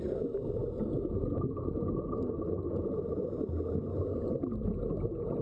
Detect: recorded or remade recorded